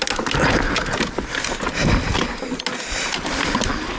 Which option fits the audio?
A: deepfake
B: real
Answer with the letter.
B